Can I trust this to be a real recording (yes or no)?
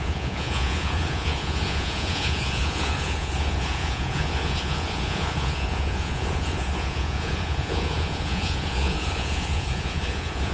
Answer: no